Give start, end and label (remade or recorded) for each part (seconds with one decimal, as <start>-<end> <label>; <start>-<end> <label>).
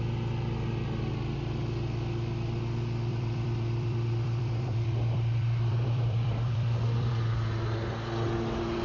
0.0-3.1 recorded; 3.1-7.1 remade; 7.1-8.8 recorded